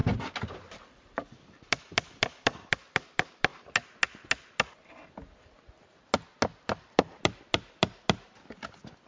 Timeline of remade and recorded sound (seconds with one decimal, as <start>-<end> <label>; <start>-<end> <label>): 0.0-0.6 recorded; 0.6-3.5 remade; 3.5-6.7 recorded; 6.7-9.1 remade